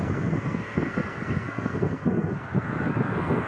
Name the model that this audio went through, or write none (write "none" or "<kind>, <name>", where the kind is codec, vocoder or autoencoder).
codec, SNAC